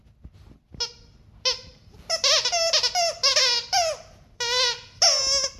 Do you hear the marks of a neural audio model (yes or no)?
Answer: no